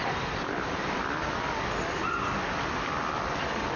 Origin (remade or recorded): recorded